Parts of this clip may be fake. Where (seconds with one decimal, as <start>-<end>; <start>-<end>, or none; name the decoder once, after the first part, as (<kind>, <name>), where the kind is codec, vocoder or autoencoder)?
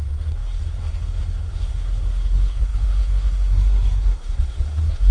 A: 0.0-5.1 (codec, SNAC)